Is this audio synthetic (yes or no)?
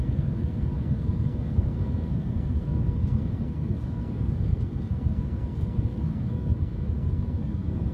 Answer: yes